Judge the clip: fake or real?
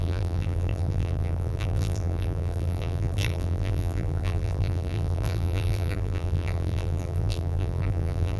fake